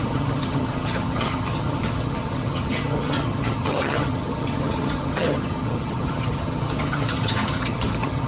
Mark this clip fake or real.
fake